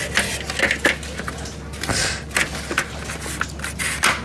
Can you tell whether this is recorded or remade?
recorded